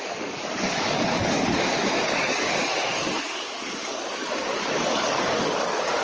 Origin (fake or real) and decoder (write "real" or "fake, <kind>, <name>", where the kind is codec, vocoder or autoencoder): fake, codec, DAC